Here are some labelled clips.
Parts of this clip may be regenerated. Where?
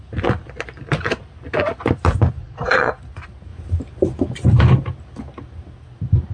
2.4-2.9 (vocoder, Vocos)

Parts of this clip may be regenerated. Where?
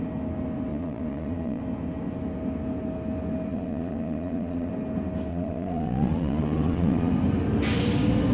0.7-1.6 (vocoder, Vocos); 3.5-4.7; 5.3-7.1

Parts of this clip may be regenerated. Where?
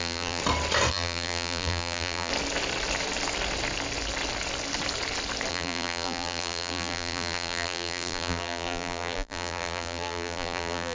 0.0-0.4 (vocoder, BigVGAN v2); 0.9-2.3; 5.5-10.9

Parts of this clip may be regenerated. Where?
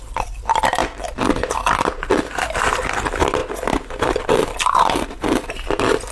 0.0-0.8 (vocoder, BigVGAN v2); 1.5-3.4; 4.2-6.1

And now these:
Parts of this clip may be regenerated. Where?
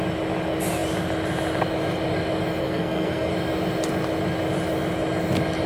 2.6-3.3 (codec, SNAC)